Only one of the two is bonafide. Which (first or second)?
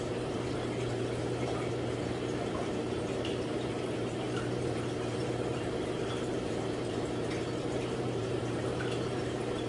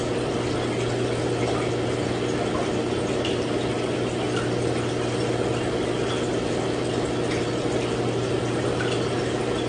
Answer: second